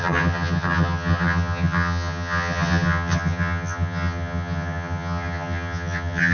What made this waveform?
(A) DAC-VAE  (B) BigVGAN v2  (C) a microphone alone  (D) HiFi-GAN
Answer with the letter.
D